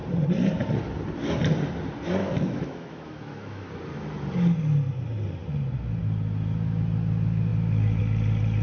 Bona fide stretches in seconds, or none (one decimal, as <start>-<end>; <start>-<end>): 0.0-2.2; 3.7-8.6